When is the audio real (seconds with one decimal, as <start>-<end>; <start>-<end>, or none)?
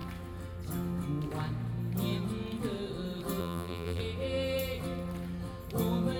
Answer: 0.0-3.4; 4.0-6.2